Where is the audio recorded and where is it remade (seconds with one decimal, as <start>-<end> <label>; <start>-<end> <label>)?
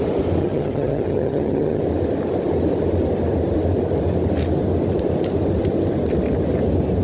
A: 0.0-0.4 recorded; 0.4-1.8 remade; 1.8-7.0 recorded